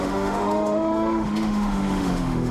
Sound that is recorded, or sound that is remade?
remade